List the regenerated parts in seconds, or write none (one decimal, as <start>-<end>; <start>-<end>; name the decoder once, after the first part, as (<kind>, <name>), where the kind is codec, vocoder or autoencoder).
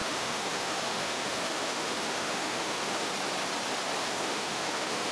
0.0-3.1 (autoencoder, DAC-VAE); 4.0-5.1